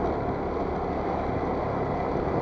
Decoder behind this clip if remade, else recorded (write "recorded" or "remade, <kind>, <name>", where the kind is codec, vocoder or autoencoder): recorded